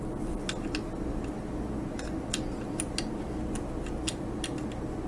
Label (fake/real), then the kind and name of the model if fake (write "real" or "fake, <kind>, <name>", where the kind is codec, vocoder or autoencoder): real